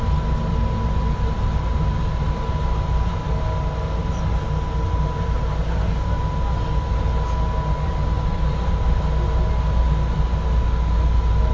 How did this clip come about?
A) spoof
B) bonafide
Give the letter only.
B